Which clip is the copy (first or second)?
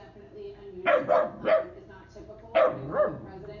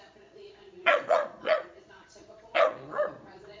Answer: second